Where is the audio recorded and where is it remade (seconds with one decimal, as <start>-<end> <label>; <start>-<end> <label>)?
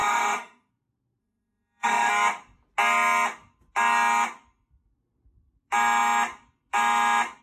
0.0-0.7 remade; 0.7-1.2 recorded; 1.2-2.1 remade; 2.1-7.4 recorded